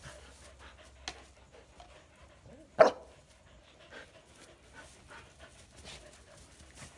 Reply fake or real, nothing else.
real